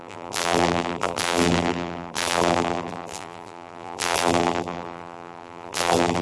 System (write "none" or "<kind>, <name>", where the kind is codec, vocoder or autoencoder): vocoder, BigVGAN v2